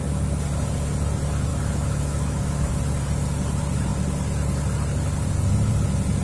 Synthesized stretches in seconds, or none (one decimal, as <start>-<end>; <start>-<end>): 1.5-2.7